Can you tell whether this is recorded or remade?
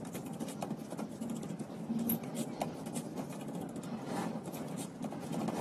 recorded